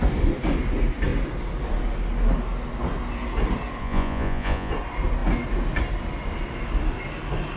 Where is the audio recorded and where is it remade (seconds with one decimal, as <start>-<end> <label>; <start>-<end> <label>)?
0.0-3.8 recorded; 3.8-4.7 remade; 4.7-7.6 recorded